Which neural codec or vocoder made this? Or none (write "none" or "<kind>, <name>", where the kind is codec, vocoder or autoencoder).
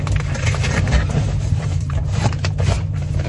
vocoder, BigVGAN v2